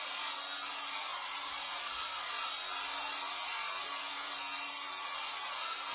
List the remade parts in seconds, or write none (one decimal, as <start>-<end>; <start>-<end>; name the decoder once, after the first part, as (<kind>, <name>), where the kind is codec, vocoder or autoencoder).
none